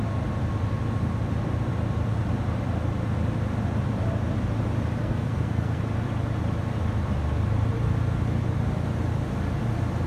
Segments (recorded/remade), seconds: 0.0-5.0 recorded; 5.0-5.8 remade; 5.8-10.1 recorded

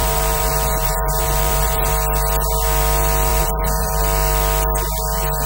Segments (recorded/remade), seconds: 0.0-1.9 remade; 1.9-3.3 recorded; 3.3-4.0 remade; 4.0-5.5 recorded

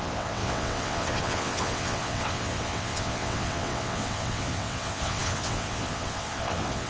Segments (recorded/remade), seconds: 0.0-6.9 remade

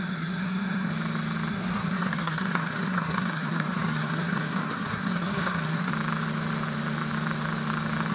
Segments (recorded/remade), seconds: 0.0-0.9 remade; 0.9-1.5 recorded; 1.5-5.9 remade; 5.9-8.1 recorded